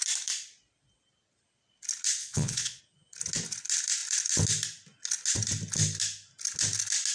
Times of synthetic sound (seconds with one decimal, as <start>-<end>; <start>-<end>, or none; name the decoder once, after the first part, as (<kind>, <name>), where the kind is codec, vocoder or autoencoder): 2.2-2.8 (vocoder, Vocos)